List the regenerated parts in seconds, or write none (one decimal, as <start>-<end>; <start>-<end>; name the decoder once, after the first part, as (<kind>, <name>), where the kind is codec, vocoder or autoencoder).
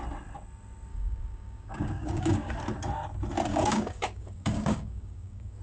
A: 0.9-2.5 (codec, DAC); 3.5-5.6